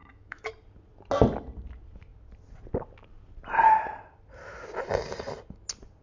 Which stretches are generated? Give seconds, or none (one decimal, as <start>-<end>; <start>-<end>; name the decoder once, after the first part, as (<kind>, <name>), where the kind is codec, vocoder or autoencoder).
0.0-0.5 (autoencoder, DAC-VAE)